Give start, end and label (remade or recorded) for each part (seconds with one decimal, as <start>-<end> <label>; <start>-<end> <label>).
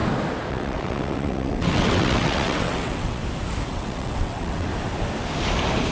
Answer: 0.0-0.5 recorded; 0.5-3.2 remade; 3.2-3.7 recorded; 3.7-4.7 remade; 4.7-5.9 recorded